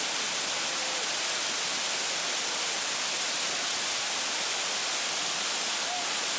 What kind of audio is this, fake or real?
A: real